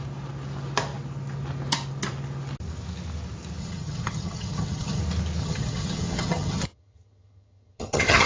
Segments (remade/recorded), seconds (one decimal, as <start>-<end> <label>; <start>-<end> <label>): 0.0-3.6 recorded; 3.6-5.0 remade; 5.0-5.4 recorded; 5.4-8.3 remade